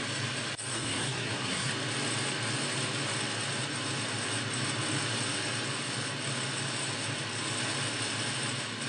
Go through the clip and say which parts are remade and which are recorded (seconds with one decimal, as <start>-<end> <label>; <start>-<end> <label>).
0.0-0.7 recorded; 0.7-1.7 remade; 1.7-8.9 recorded